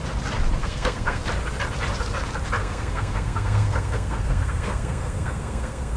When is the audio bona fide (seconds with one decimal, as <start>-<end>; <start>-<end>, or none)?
0.0-0.6; 1.2-2.6